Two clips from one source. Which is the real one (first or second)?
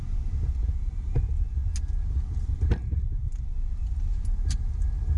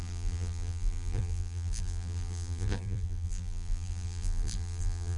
first